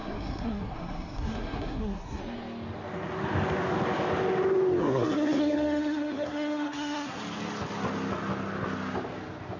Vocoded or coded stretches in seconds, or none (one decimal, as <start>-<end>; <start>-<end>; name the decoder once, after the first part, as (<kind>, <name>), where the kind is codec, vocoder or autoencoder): 0.0-2.2 (codec, SNAC); 4.8-7.2